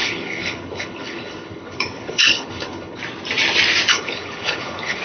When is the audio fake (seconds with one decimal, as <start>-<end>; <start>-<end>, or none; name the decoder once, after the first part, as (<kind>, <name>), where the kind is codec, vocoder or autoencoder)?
0.0-3.0 (codec, HILCodec); 3.9-5.0